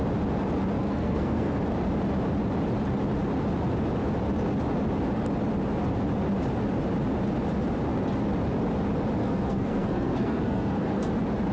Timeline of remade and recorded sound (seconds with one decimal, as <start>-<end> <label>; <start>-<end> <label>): 0.0-0.8 recorded; 0.8-1.6 remade; 1.6-9.2 recorded; 9.2-11.1 remade; 11.1-11.5 recorded